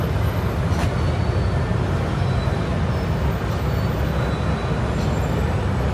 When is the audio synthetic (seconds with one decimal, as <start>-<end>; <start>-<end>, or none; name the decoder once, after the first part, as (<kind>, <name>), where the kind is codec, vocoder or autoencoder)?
none